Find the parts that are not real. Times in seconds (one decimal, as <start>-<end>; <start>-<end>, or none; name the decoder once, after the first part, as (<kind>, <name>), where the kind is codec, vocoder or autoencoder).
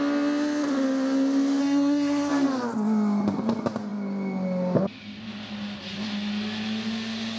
1.6-2.3 (codec, SNAC)